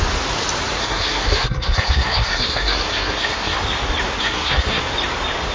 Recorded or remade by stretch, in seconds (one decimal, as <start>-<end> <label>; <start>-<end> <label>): 0.0-0.8 recorded; 0.8-3.6 remade; 3.6-4.2 recorded; 4.2-4.8 remade; 4.8-5.5 recorded